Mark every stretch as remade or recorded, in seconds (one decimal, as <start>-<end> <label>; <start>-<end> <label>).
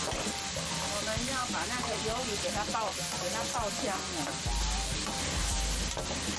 0.0-6.4 recorded